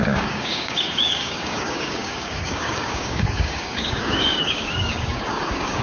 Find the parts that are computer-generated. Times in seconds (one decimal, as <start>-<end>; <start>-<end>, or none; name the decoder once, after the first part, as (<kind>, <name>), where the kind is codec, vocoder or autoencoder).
0.0-5.8 (codec, DAC)

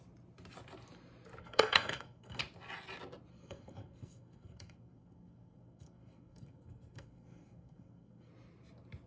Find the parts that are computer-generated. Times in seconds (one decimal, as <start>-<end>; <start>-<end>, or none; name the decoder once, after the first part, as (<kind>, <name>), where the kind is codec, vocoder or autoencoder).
1.4-2.4 (codec, SNAC); 3.3-8.3

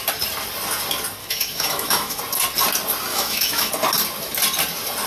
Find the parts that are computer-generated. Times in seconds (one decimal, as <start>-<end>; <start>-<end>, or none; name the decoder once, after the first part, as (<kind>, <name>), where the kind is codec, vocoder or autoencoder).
1.2-2.2 (autoencoder, DAC-VAE); 3.1-3.7

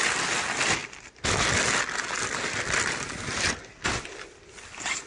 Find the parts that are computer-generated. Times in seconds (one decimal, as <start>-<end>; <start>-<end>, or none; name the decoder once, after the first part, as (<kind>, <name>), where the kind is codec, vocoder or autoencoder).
none

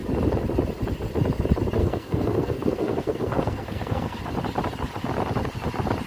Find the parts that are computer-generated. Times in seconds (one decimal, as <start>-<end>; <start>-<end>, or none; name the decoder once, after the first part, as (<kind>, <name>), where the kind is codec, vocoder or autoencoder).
1.8-4.2 (codec, SNAC)

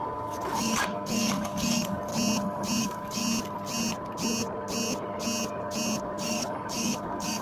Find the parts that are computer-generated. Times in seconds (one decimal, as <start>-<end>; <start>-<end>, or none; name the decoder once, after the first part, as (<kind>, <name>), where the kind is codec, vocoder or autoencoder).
0.0-2.1 (codec, DAC); 2.8-3.2; 6.0-7.4